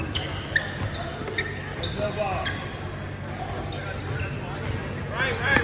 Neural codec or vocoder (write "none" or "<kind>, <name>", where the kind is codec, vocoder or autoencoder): none